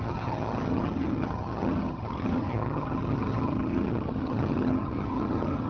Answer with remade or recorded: remade